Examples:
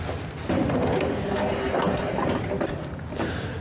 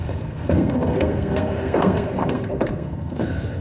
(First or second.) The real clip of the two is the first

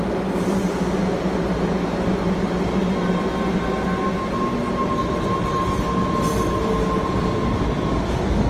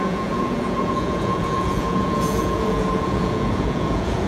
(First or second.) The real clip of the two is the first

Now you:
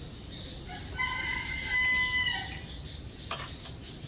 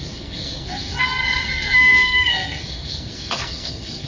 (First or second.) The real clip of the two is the first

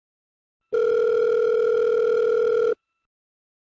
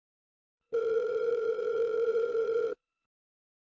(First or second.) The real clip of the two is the first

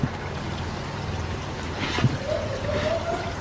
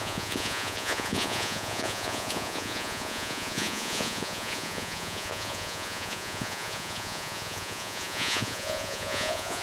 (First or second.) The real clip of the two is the first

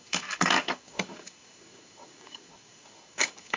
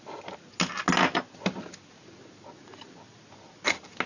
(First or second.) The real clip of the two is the second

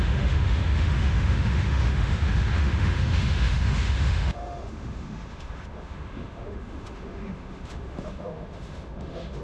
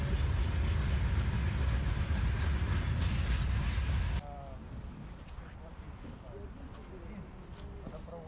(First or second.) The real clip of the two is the second